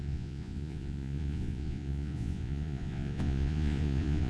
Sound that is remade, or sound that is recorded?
remade